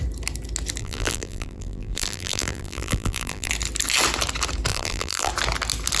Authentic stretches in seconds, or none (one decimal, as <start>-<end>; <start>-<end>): 0.0-0.8; 3.5-4.7; 5.3-6.0